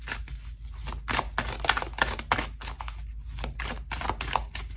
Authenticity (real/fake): real